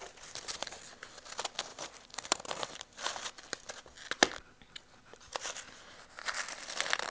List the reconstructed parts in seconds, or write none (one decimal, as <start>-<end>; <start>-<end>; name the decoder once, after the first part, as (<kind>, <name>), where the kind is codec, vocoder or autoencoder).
1.7-3.0 (vocoder, BigVGAN v2)